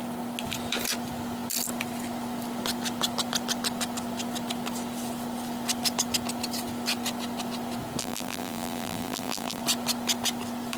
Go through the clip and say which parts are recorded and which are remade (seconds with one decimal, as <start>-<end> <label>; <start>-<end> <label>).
0.0-8.0 recorded; 8.0-9.6 remade; 9.6-10.8 recorded